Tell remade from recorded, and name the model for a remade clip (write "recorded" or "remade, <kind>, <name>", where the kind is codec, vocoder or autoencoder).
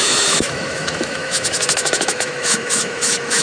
remade, autoencoder, DAC-VAE